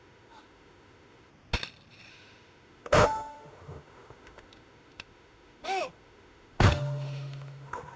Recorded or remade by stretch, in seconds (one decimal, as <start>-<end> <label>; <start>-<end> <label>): 0.0-1.3 remade; 1.3-2.1 recorded; 2.1-8.0 remade